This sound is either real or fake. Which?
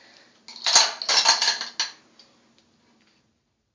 real